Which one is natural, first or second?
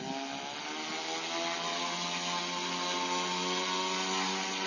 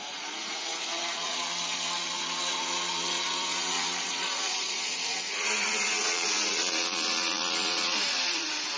first